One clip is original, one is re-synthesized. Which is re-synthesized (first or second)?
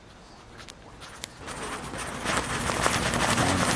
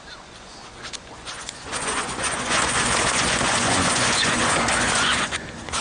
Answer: second